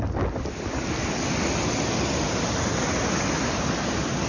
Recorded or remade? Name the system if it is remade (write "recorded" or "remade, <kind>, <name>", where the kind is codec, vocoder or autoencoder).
recorded